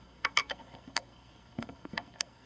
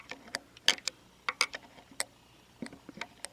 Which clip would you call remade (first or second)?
first